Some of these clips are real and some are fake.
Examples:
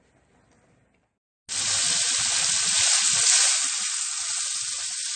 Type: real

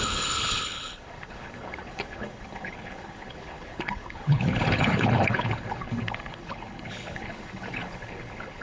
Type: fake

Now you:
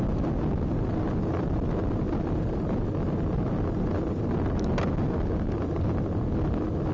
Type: real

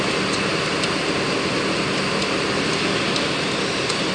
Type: real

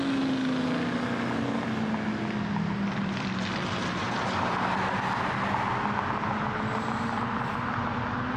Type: real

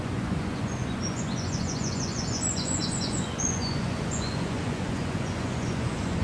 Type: fake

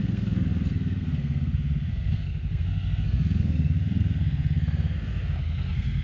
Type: fake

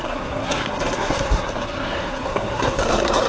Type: fake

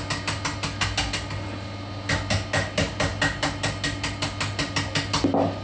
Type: real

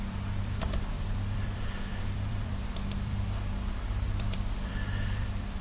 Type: fake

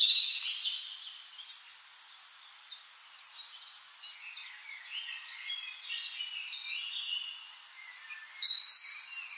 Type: real